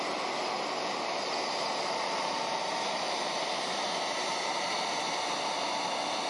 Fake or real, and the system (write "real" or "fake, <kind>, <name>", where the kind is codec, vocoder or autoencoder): real